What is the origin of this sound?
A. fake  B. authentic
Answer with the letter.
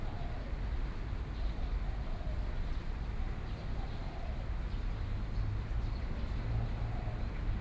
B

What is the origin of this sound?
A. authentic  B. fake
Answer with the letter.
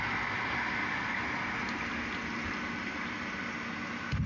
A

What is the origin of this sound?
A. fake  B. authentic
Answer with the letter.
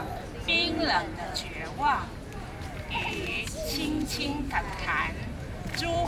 A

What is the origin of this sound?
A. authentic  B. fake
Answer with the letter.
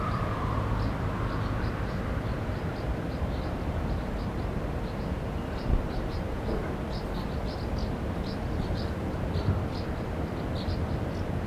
B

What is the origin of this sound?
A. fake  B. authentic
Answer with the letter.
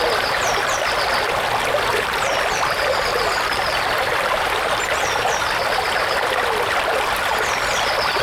B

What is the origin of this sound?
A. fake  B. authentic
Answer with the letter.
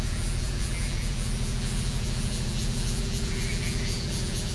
A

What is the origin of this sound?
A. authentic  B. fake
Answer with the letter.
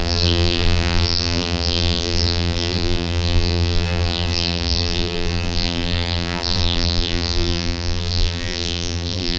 B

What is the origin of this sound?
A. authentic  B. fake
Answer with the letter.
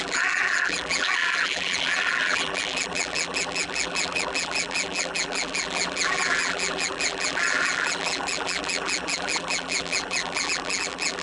B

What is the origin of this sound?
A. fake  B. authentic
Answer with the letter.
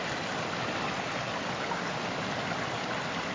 B